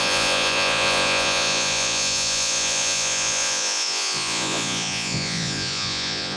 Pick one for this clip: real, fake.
fake